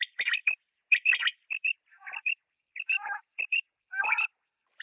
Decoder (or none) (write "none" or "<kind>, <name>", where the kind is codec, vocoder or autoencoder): none